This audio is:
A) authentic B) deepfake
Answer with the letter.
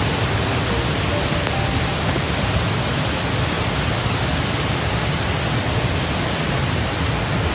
A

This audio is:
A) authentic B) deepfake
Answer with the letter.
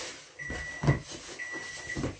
A